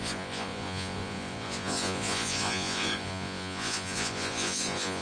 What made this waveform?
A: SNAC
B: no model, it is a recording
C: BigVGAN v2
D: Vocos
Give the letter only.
D